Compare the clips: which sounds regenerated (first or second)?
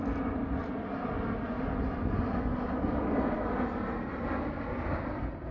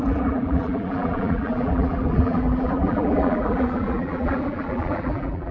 second